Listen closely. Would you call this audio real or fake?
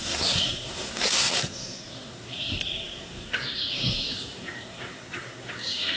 fake